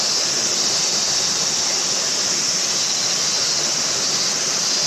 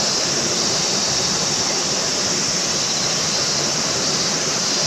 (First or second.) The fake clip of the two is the second